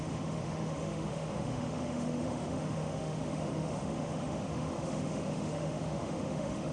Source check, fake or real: fake